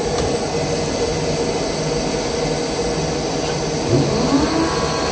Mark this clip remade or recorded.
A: recorded